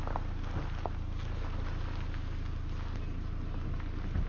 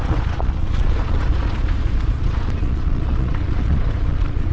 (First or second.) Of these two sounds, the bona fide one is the first